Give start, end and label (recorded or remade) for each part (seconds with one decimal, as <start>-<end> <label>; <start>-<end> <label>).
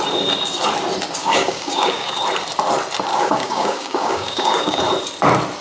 0.0-1.2 recorded; 1.2-2.2 remade; 2.2-3.1 recorded; 3.1-4.8 remade; 4.8-5.6 recorded